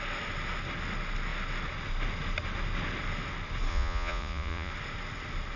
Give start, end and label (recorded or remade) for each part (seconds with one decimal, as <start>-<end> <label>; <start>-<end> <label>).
0.0-3.7 recorded; 3.7-4.7 remade; 4.7-5.6 recorded